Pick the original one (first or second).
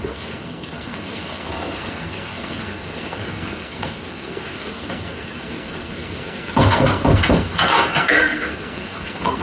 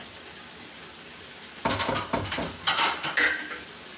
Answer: second